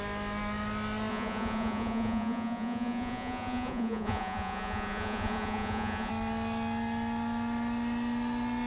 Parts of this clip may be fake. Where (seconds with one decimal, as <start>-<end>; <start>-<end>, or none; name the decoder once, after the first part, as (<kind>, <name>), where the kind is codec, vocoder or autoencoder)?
1.1-6.1 (vocoder, Vocos)